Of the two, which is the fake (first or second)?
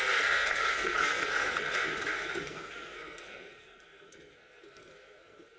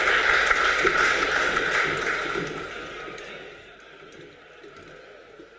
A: first